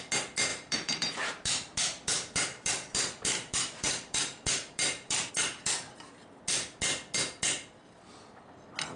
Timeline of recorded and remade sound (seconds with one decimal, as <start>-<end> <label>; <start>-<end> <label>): 0.0-0.5 recorded; 0.5-5.3 remade; 5.3-9.0 recorded